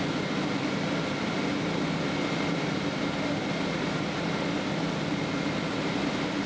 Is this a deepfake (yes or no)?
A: no